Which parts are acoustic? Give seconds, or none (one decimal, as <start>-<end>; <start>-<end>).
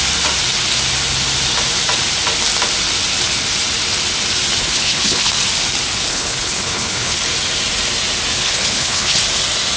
0.0-4.6; 5.3-6.1; 7.2-8.4; 9.2-9.8